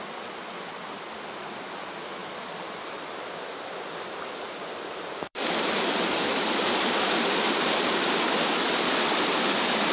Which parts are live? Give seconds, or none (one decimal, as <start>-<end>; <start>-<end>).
0.0-2.2; 6.5-9.9

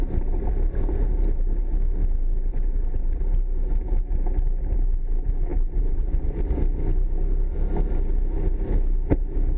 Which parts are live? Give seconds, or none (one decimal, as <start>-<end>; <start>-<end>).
0.0-5.5; 6.4-9.6

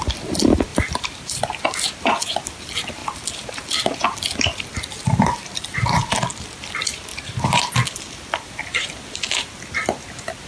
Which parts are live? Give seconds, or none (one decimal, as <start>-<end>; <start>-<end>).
0.0-0.7; 1.4-7.1; 7.7-10.5

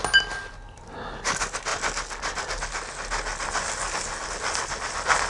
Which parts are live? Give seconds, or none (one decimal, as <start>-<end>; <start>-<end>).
0.0-5.3